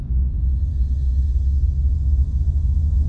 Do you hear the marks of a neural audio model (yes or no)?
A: no